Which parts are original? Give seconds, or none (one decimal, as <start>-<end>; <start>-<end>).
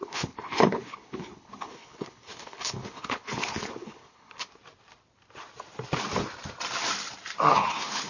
4.5-7.5